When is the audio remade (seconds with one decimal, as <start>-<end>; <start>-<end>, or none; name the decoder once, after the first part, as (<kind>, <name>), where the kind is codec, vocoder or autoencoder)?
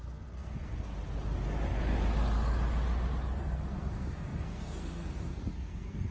0.0-0.9 (codec, SNAC); 3.4-6.1